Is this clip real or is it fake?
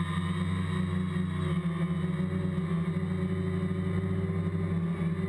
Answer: real